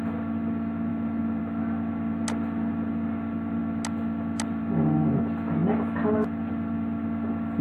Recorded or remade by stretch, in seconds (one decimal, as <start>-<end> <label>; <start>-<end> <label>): 0.0-7.6 recorded